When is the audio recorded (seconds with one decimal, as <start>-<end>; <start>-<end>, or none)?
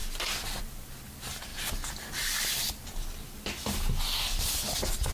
0.0-5.1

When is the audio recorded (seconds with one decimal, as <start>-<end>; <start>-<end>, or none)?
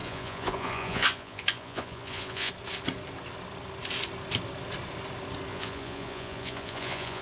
2.5-5.5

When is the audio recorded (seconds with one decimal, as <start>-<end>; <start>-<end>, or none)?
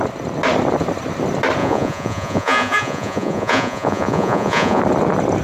0.0-1.6; 4.8-5.4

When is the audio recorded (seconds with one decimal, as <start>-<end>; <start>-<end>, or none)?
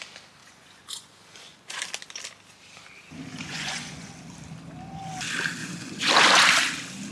0.0-0.4; 1.8-3.3; 4.1-5.6; 6.1-7.1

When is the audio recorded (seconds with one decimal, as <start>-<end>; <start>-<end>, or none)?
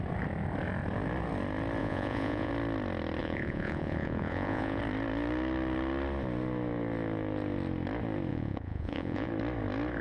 0.0-1.8; 2.5-3.2; 4.8-8.3; 9.3-10.0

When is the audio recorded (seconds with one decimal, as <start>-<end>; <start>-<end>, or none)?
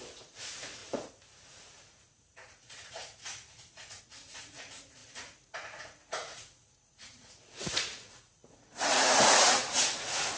none